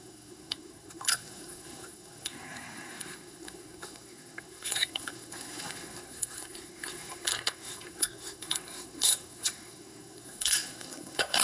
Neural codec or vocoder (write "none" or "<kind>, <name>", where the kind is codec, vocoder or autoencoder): codec, SNAC